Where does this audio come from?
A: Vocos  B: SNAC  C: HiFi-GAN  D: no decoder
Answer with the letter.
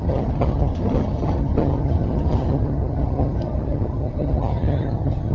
C